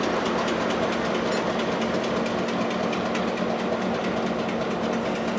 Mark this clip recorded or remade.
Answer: recorded